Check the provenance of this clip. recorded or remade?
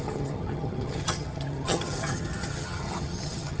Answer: remade